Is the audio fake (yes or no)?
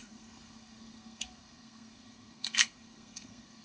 yes